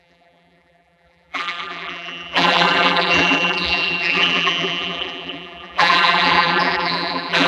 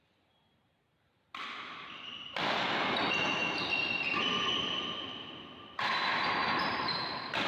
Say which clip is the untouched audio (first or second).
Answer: second